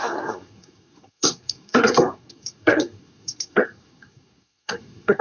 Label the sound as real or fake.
fake